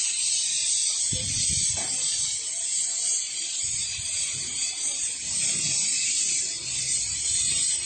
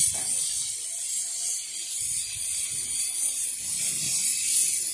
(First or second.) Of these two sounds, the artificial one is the first